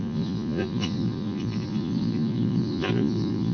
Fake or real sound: fake